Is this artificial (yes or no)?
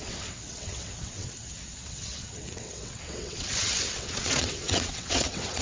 yes